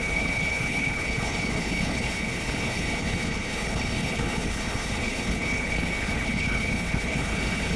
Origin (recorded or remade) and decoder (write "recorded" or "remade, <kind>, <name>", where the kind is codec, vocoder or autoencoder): remade, codec, HILCodec